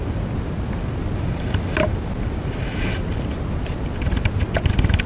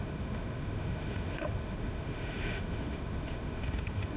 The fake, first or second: second